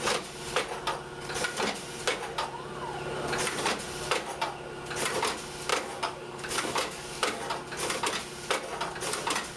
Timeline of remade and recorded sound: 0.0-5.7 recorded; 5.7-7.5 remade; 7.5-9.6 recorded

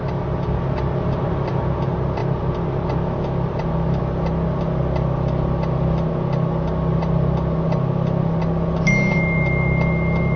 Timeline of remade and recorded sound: 0.0-10.4 recorded

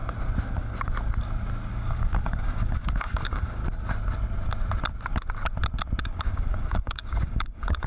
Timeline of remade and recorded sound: 0.0-1.7 recorded; 1.7-3.6 remade; 3.6-6.0 recorded; 6.0-7.9 remade

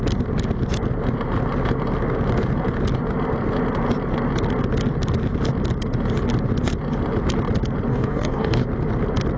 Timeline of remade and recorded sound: 0.0-7.9 recorded; 7.9-8.6 remade; 8.6-9.4 recorded

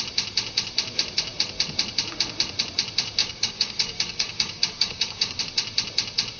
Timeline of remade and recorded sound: 0.0-3.2 recorded; 3.2-5.4 remade; 5.4-6.4 recorded

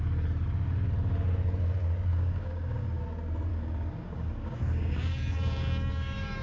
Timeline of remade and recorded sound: 0.0-2.1 recorded; 2.1-3.0 remade; 3.0-3.5 recorded; 3.5-6.4 remade

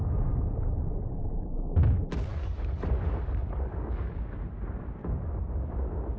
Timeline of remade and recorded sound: 0.0-2.3 recorded; 2.3-4.1 remade; 4.1-5.0 recorded; 5.0-5.7 remade; 5.7-6.2 recorded

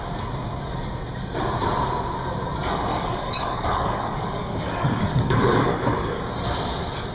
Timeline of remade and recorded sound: 0.0-2.9 recorded; 2.9-6.2 remade; 6.2-7.1 recorded